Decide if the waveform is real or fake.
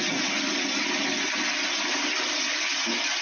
real